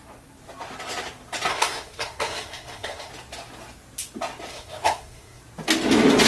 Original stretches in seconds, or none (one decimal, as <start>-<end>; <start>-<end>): 0.0-1.5; 3.1-4.5; 5.4-6.3